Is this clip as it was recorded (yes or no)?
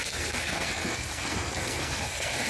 no